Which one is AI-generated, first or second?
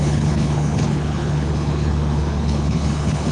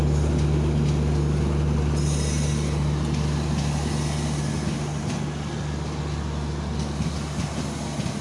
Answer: first